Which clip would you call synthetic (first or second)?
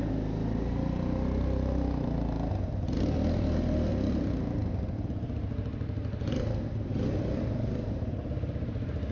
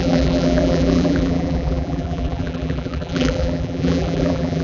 second